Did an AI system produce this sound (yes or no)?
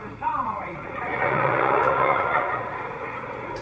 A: yes